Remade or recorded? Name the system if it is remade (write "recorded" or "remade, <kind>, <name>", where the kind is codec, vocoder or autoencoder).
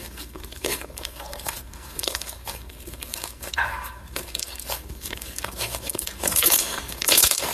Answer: remade, codec, SNAC